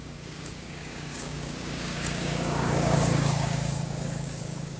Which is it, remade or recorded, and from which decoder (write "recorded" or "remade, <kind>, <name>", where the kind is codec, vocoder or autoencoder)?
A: remade, codec, DAC